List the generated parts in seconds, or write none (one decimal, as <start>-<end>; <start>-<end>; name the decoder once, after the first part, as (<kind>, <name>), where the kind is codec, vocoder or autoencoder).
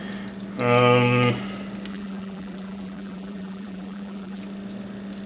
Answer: 1.9-4.4 (vocoder, BigVGAN v2)